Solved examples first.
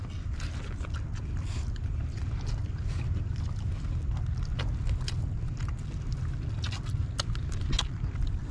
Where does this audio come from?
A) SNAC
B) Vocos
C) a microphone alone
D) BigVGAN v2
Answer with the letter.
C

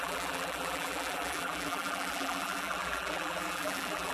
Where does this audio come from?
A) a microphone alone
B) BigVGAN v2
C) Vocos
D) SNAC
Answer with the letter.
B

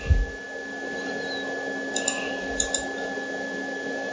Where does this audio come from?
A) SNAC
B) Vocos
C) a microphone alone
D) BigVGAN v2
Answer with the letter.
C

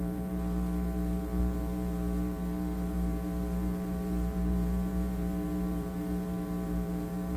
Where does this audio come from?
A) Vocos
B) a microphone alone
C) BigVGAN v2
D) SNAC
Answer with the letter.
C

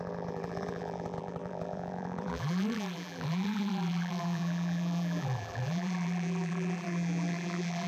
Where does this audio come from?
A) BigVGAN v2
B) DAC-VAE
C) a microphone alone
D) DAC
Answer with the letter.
A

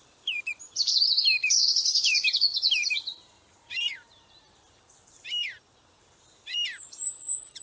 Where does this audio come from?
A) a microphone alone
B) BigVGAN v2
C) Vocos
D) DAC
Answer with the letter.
B